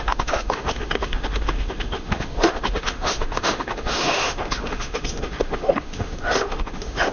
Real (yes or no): no